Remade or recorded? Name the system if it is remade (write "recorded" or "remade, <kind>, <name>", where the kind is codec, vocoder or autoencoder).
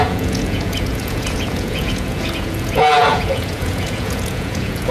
remade, vocoder, Vocos